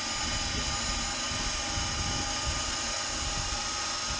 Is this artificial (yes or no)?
no